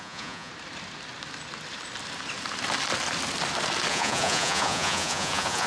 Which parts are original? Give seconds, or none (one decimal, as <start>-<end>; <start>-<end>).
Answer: 0.5-3.9